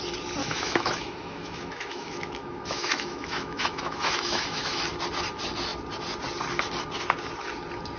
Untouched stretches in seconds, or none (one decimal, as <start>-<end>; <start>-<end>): 0.0-0.4; 4.8-8.0